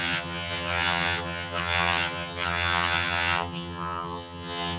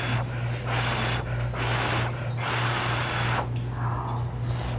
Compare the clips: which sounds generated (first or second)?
first